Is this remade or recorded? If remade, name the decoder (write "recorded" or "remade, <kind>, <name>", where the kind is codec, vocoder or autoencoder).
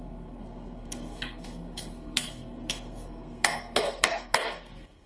remade, codec, SNAC